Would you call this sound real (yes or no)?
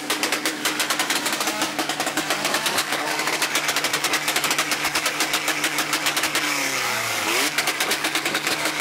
no